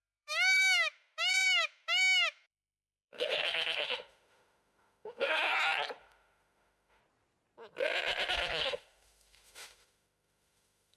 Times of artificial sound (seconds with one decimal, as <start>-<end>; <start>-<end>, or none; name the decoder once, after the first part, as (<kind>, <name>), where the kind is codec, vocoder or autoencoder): 0.0-5.5 (autoencoder, DAC-VAE); 6.0-7.0; 8.3-11.0